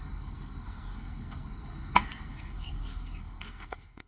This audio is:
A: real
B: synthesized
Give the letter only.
B